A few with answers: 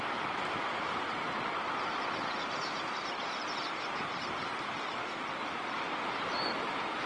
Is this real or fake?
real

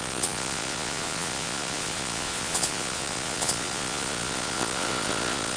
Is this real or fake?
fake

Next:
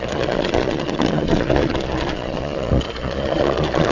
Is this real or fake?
fake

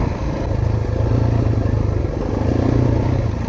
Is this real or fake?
real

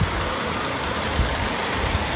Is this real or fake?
real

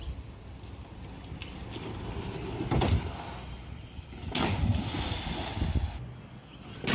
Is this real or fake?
real